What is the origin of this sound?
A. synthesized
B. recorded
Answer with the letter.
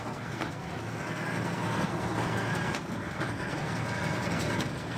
A